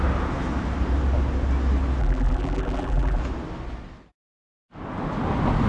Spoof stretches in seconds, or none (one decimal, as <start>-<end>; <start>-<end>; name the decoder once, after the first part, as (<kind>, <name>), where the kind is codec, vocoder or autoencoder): 2.0-3.2 (vocoder, BigVGAN v2)